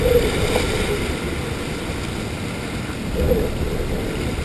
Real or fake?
real